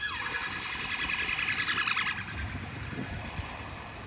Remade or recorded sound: recorded